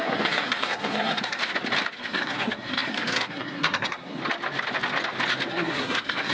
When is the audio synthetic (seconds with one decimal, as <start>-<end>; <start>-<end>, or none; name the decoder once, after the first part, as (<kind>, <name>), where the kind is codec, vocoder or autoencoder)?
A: 0.0-1.4 (codec, SNAC); 2.0-4.2; 5.5-6.3